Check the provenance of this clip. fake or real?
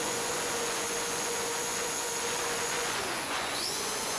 fake